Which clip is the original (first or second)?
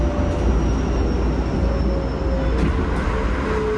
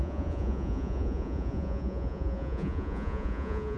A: first